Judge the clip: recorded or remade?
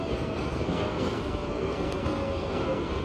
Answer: remade